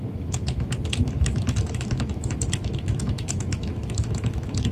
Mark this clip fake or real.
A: fake